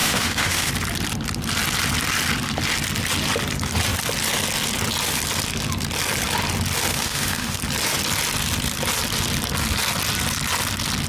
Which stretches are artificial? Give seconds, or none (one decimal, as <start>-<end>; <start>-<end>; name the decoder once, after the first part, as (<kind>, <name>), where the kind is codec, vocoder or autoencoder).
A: 0.0-0.7 (autoencoder, DAC-VAE); 6.9-7.6